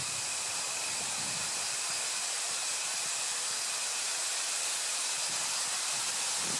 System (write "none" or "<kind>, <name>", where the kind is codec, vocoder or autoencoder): none